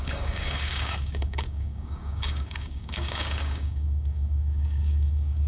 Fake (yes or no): yes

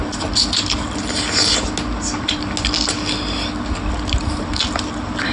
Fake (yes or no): no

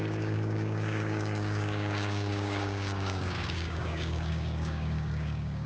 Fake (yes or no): yes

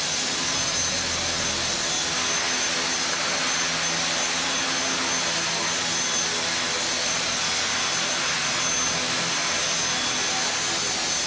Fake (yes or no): no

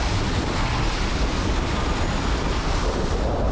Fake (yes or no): no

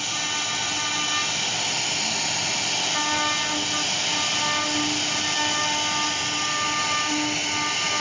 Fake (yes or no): no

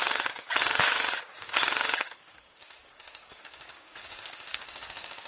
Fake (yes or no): yes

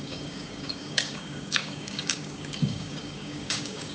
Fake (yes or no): yes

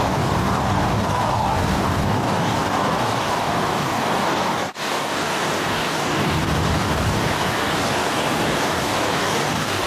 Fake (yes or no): yes